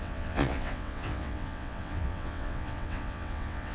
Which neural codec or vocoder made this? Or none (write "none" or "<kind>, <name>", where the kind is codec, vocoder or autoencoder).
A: vocoder, WaveNeXt